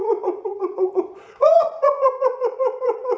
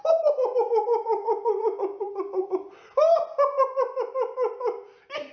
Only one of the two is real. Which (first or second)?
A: second